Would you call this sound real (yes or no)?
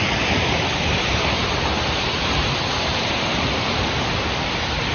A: no